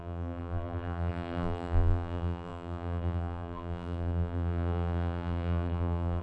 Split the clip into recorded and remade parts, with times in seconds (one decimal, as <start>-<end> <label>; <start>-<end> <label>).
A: 0.0-6.2 remade